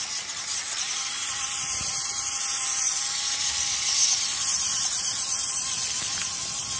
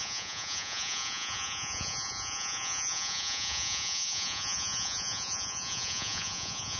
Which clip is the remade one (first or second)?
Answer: second